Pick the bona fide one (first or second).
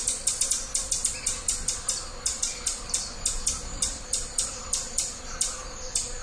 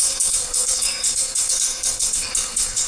first